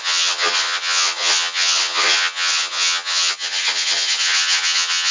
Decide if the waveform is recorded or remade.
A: remade